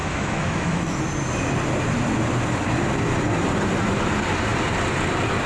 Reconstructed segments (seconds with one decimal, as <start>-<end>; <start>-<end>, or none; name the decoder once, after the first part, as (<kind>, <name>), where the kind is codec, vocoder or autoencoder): 0.0-1.0 (autoencoder, DAC-VAE)